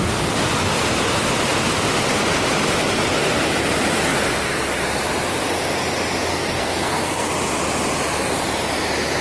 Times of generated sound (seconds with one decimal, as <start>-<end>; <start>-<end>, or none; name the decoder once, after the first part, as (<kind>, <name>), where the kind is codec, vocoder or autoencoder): 6.3-7.3 (codec, SNAC)